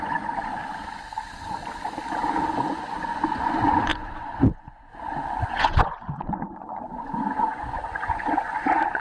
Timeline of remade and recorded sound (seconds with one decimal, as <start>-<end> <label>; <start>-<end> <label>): 0.0-0.6 remade; 0.6-2.7 recorded; 2.7-4.9 remade; 4.9-5.5 recorded; 5.5-9.0 remade